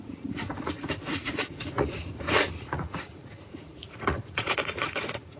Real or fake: fake